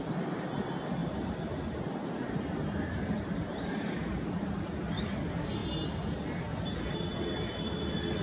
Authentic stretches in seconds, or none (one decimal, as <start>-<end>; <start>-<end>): 0.0-1.0; 5.0-8.2